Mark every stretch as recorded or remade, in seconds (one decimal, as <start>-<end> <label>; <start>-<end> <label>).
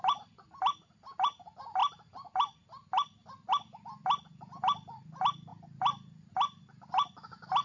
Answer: 0.0-7.6 recorded